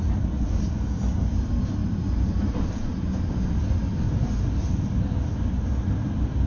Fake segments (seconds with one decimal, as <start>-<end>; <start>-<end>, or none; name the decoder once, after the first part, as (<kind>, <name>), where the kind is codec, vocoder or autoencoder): 1.8-3.5 (vocoder, BigVGAN v2)